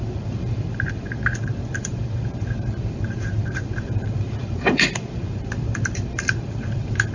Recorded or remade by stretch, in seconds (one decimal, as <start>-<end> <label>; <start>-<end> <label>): 0.0-7.1 remade